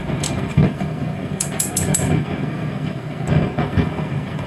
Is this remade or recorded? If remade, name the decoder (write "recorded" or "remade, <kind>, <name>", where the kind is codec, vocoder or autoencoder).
remade, codec, SNAC